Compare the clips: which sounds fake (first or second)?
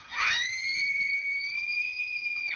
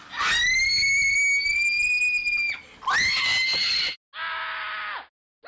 first